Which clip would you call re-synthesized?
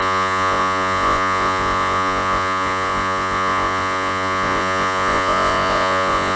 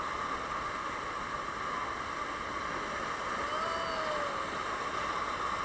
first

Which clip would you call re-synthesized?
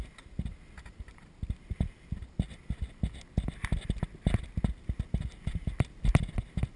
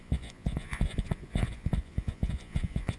second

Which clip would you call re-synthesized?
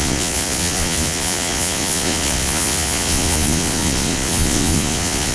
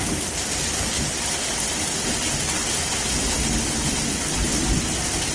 first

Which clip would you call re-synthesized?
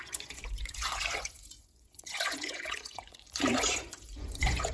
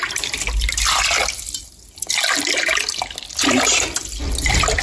first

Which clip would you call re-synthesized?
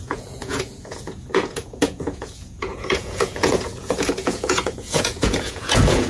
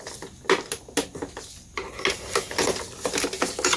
first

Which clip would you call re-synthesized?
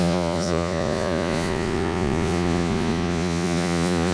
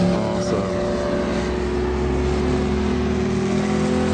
first